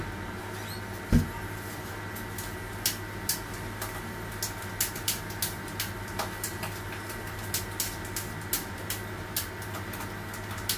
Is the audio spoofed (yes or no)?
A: no